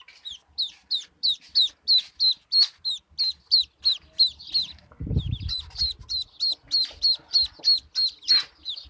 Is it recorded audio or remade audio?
recorded